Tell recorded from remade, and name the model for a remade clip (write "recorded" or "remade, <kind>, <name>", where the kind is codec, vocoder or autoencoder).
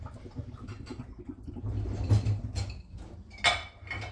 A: recorded